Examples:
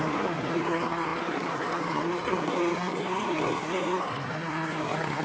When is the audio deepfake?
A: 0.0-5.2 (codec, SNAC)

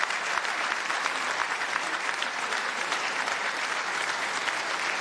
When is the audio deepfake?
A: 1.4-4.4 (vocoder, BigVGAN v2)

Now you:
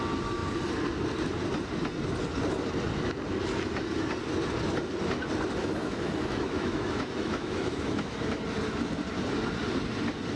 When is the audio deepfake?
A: 5.6-8.4 (autoencoder, DAC-VAE)